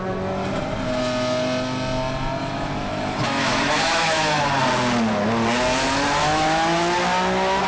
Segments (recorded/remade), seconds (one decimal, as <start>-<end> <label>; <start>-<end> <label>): 0.0-2.4 recorded; 2.4-4.4 remade; 4.4-6.2 recorded; 6.2-6.8 remade; 6.8-7.7 recorded